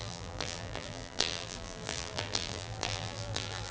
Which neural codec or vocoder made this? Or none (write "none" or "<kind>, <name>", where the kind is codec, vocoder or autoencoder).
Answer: vocoder, BigVGAN v2